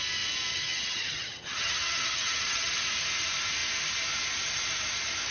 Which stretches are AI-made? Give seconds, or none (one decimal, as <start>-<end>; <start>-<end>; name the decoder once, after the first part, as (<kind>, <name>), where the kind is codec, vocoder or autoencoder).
0.5-2.7 (vocoder, HiFi-GAN)